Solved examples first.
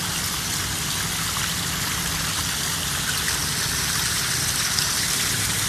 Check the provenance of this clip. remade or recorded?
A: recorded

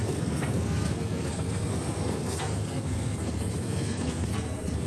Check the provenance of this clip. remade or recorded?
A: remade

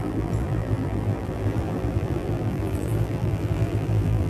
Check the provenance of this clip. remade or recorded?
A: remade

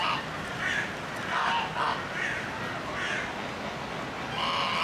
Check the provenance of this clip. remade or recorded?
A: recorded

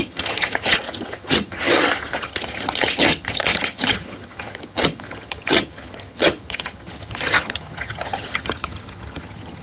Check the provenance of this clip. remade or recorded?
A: remade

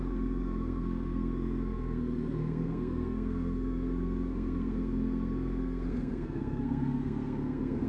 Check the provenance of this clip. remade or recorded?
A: remade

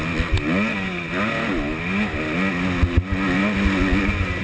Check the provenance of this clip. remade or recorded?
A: recorded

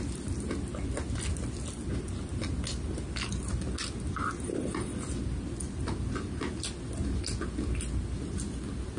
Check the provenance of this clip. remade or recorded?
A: recorded